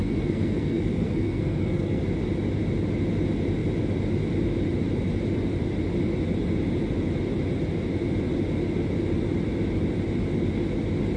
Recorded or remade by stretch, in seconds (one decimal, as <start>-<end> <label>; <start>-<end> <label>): 0.0-2.0 remade; 2.0-11.2 recorded